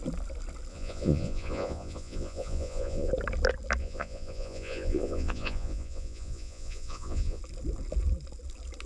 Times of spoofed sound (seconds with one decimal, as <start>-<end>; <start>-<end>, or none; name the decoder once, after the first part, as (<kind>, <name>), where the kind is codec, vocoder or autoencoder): 0.7-3.1 (vocoder, Vocos); 3.8-7.4